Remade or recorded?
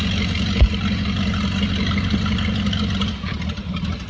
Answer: recorded